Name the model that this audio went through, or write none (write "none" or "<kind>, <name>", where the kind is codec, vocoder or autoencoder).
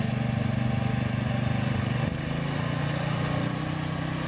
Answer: none